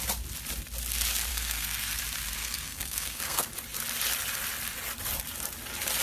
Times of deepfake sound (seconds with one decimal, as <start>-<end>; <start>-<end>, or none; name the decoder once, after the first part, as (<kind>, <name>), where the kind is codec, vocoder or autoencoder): 1.3-2.0 (codec, SNAC); 2.4-3.5